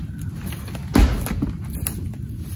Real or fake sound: real